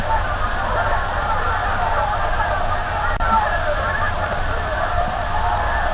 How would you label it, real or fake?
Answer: real